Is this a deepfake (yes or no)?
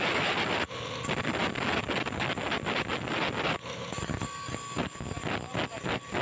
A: no